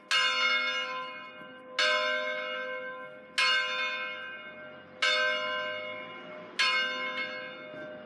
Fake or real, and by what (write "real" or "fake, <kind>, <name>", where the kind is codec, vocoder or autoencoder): real